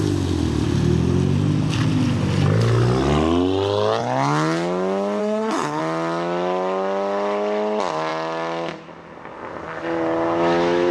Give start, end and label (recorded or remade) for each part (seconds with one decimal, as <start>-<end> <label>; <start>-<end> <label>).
0.0-5.2 recorded; 5.2-5.8 remade; 5.8-10.9 recorded